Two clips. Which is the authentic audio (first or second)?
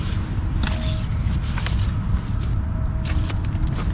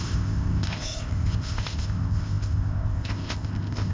first